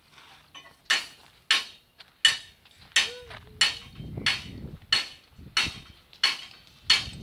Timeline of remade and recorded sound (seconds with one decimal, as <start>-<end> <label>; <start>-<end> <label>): 0.0-7.2 recorded